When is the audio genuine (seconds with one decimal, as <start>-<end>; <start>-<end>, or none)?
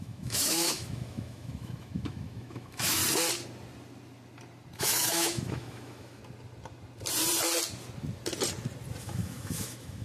3.0-4.8; 6.2-9.0